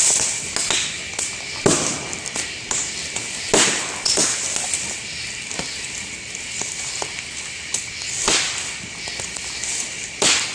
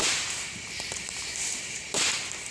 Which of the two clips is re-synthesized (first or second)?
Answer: second